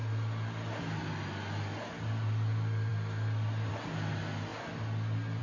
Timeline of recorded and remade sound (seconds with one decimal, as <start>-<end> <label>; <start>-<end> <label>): 0.0-5.4 recorded